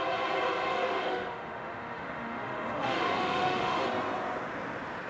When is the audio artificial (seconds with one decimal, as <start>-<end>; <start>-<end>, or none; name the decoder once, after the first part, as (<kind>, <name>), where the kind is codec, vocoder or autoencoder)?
0.7-3.8 (autoencoder, DAC-VAE)